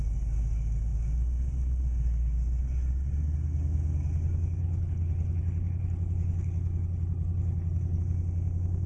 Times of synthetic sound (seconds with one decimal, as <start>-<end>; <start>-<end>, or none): 4.6-8.0